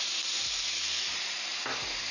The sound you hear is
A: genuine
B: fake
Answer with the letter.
A